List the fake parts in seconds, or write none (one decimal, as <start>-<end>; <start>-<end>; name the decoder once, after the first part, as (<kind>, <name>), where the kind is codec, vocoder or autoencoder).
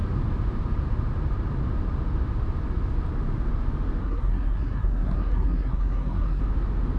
4.0-6.4 (codec, SNAC)